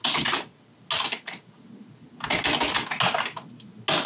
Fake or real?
real